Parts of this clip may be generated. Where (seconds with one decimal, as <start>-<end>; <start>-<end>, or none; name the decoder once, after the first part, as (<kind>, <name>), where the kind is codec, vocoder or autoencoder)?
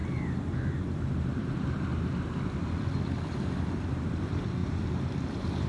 0.0-4.6 (vocoder, BigVGAN v2)